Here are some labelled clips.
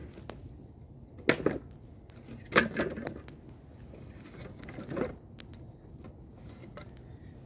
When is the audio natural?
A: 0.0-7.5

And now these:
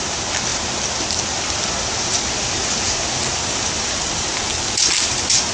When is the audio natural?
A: 0.0-5.5

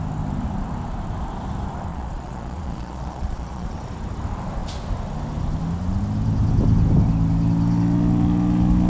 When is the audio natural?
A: 0.0-1.9; 3.8-8.9

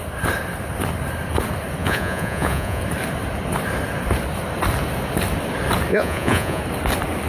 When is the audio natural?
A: 0.0-1.8; 2.8-5.9; 6.6-7.3

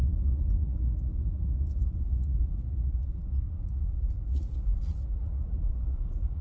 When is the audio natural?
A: none

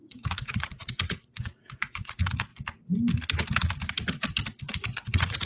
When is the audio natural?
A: 2.5-4.7

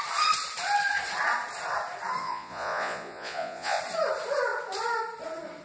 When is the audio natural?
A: 0.0-2.2; 3.8-5.6